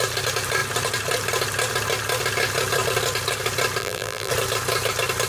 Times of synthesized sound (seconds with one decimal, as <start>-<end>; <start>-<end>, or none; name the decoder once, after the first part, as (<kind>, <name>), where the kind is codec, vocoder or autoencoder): 3.8-4.3 (vocoder, BigVGAN v2)